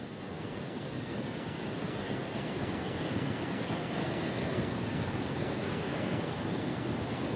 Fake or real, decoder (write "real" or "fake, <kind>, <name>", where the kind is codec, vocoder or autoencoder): fake, codec, SNAC